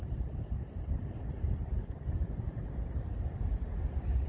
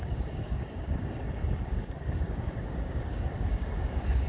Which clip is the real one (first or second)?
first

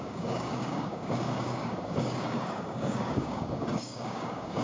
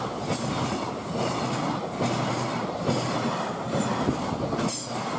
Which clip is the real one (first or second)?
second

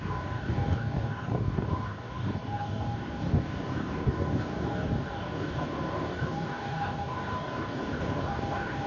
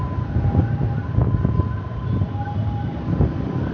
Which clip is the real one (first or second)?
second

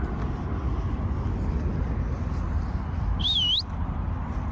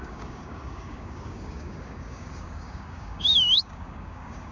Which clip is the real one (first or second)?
first